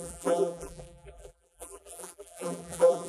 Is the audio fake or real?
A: fake